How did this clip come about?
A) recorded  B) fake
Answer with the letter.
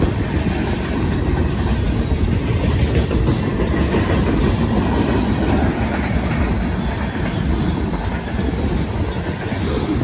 A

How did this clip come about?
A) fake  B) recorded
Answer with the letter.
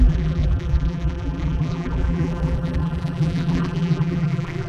A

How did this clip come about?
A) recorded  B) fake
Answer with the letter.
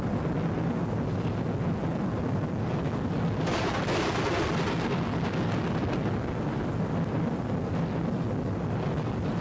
A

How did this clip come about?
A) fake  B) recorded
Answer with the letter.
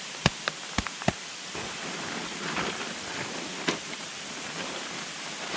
A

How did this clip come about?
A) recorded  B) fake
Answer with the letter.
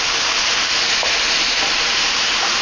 B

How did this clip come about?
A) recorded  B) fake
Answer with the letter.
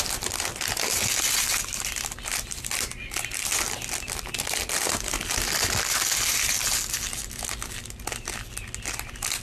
A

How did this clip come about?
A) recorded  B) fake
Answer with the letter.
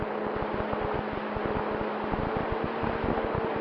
A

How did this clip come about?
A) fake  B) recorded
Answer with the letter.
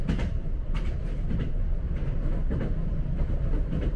A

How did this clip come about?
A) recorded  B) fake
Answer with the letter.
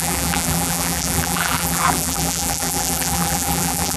B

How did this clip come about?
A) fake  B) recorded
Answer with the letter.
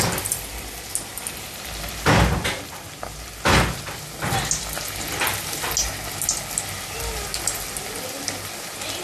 B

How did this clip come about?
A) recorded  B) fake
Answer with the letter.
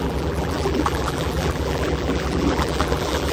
B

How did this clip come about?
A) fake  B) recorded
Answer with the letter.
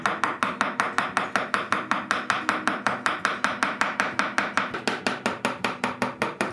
B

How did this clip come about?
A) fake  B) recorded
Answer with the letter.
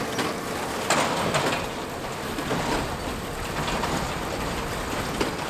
A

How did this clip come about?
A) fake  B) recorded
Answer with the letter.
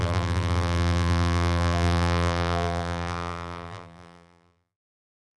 A